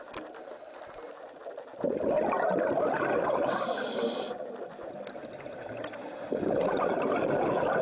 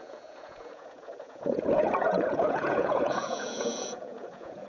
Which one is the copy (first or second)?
second